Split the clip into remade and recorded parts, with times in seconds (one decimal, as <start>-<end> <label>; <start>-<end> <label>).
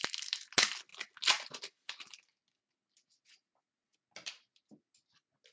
0.0-5.5 recorded